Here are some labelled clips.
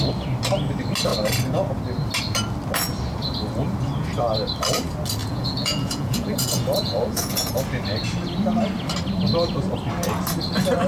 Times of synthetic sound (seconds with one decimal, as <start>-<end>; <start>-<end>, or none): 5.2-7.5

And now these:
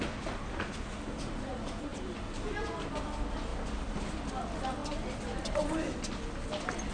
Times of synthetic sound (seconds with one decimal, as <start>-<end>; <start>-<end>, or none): none

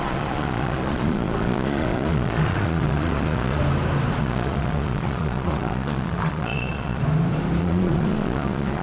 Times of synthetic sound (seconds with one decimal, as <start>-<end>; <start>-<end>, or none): 0.0-3.6; 4.2-7.0; 7.6-8.8

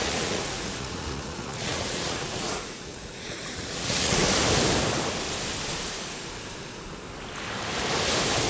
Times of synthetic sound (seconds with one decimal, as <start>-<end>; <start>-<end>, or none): 0.0-4.2

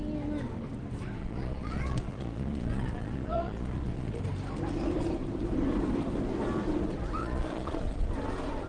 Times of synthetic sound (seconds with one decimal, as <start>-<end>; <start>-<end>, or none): 1.2-4.2; 7.2-8.1

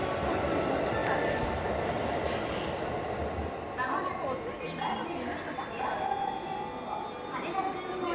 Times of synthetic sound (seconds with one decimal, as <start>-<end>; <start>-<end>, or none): none

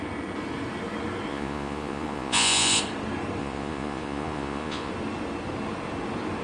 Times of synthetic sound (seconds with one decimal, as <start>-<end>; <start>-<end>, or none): 1.3-2.8; 3.4-4.9